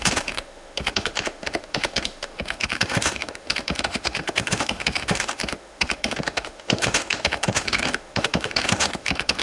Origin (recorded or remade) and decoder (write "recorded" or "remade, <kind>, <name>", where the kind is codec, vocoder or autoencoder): remade, autoencoder, DAC-VAE